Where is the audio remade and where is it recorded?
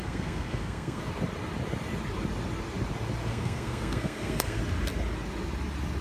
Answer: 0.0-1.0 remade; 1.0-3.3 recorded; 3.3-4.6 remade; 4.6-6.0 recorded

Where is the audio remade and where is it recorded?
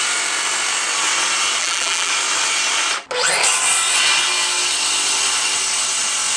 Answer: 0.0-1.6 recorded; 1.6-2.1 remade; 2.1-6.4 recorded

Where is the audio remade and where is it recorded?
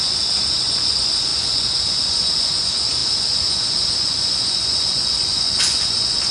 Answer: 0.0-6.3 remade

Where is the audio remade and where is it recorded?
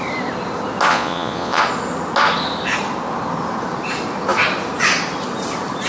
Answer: 0.0-0.9 recorded; 0.9-1.6 remade; 1.6-5.9 recorded